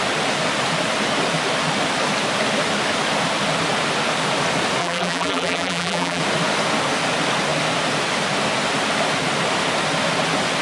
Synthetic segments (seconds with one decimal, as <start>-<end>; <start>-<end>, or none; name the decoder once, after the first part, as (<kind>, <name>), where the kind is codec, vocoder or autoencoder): 4.8-6.2 (vocoder, BigVGAN v2)